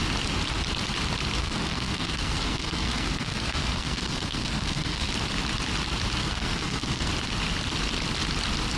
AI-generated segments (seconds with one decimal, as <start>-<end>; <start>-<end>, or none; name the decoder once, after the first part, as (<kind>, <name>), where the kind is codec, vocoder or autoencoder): 1.4-5.1 (codec, SNAC); 6.2-7.1